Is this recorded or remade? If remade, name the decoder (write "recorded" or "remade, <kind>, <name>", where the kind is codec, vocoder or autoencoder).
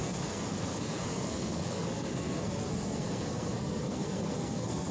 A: remade, codec, SNAC